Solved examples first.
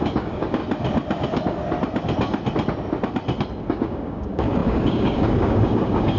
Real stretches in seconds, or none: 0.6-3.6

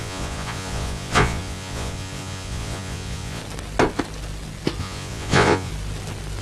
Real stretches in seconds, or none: 3.4-4.8; 5.7-6.4

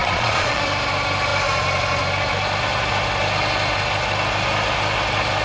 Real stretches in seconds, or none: 0.6-5.4

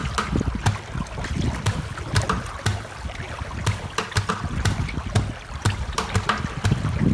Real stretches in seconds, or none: 0.0-7.1

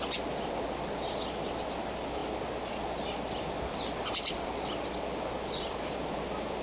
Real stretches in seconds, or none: 0.0-6.6

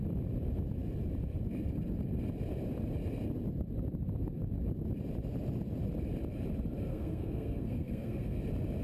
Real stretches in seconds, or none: 0.0-6.9; 8.4-8.8

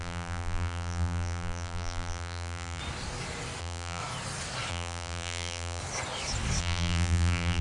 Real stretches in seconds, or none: 2.8-3.6; 4.0-4.7; 5.8-6.6

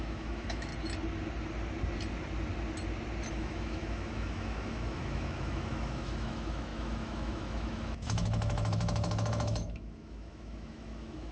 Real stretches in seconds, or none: 0.7-3.3